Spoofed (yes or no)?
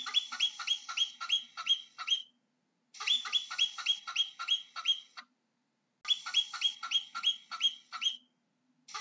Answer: no